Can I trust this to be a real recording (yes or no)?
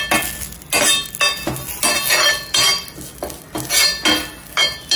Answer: yes